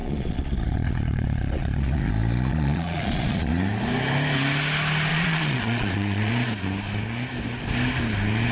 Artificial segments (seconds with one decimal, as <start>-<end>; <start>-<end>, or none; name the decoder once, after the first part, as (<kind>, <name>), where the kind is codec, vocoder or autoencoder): 0.0-2.1 (vocoder, Vocos); 2.5-3.5; 5.1-6.3